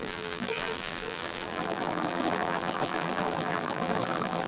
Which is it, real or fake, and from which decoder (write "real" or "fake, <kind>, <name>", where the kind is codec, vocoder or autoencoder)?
fake, vocoder, BigVGAN v2